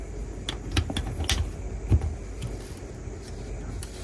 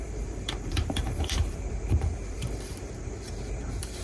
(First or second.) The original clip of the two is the first